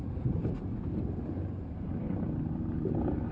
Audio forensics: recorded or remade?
recorded